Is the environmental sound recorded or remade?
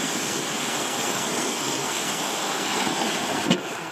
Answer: remade